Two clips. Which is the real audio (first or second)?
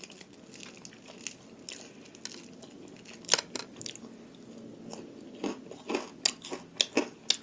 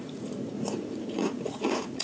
first